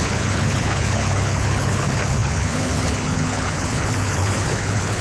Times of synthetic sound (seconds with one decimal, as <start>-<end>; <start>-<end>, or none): 0.0-5.0